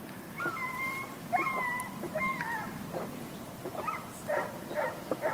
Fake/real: fake